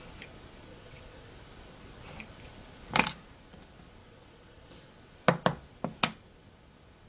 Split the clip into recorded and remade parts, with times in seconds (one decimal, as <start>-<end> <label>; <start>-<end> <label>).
0.0-0.7 recorded; 0.7-1.3 remade; 1.3-4.0 recorded; 4.0-4.9 remade; 4.9-7.1 recorded